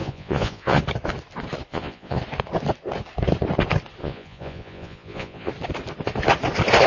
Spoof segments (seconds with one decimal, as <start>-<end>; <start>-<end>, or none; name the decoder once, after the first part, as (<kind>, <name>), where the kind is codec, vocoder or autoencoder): 0.0-0.8 (vocoder, Vocos); 1.7-2.2; 4.0-5.5